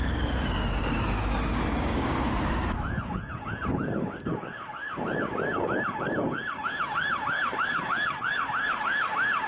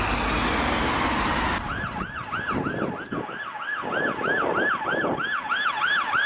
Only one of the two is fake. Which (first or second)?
first